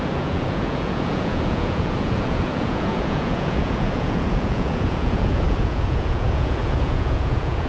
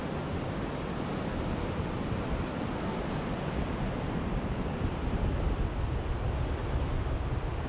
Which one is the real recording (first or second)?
second